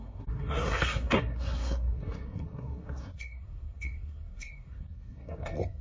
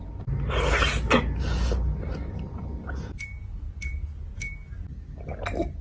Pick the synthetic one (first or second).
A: first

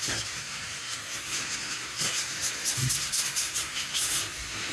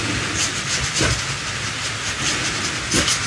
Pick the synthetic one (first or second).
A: first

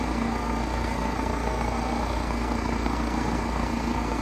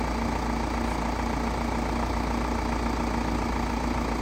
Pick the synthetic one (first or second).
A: first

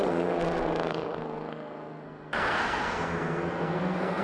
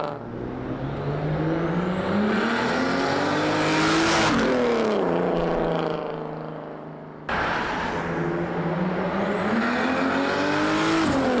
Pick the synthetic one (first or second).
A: first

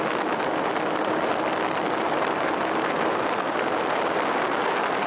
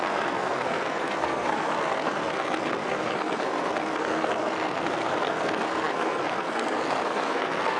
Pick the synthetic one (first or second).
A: second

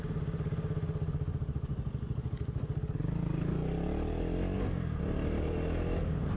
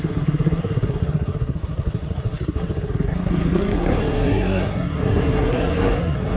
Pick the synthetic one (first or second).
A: second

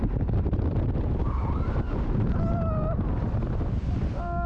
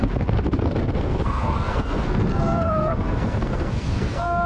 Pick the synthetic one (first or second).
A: second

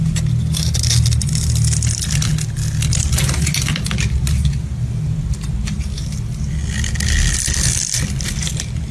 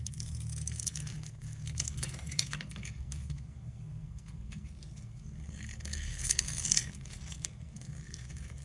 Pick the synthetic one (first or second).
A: second